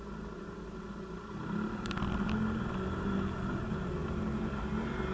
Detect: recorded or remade recorded